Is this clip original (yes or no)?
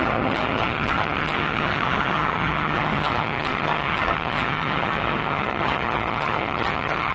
no